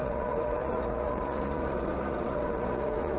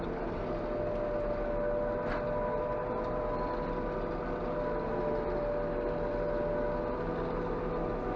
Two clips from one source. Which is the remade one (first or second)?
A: first